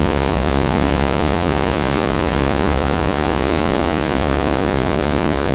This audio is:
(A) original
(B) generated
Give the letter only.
B